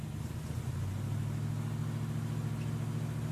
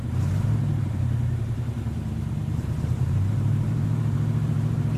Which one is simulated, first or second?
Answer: second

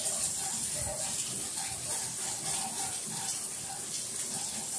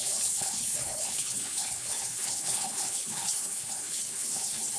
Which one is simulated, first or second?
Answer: second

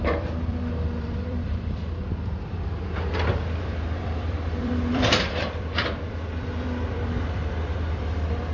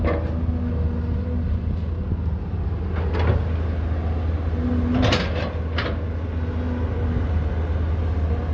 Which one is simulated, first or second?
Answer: first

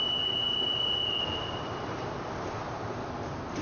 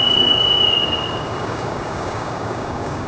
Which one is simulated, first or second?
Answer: second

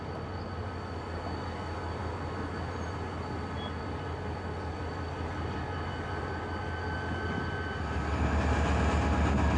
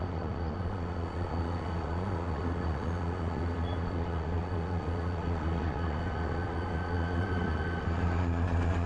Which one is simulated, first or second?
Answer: second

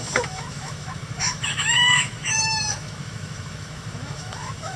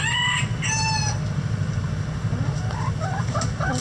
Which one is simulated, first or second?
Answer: first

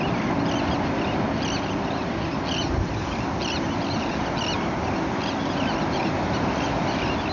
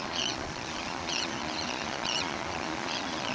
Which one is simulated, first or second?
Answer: second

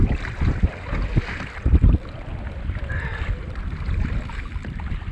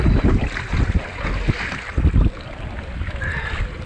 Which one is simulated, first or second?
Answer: first